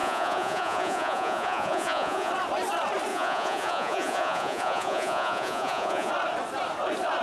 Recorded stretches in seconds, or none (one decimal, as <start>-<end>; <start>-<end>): 2.3-3.1; 6.1-7.2